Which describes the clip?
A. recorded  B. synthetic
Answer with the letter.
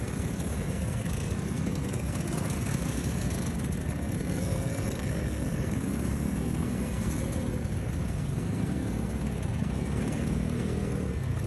B